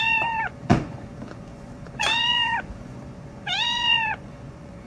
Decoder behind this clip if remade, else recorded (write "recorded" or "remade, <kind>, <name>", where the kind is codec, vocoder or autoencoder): remade, vocoder, Vocos